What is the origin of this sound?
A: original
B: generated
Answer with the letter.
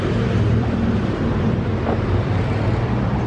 B